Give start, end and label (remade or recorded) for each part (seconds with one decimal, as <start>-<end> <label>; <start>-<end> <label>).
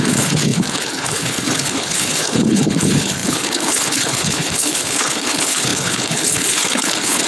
0.0-7.3 remade